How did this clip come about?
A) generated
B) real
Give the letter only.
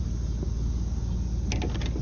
B